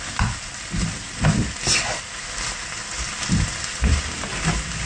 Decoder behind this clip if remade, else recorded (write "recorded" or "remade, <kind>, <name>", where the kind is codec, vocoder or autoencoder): recorded